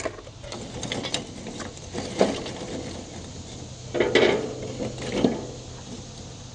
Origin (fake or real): real